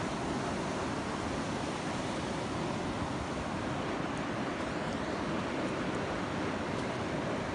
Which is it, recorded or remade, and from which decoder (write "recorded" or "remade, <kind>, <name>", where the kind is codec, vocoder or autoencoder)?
recorded